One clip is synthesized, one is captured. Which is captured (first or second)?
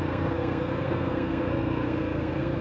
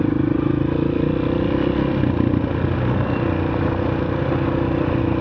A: second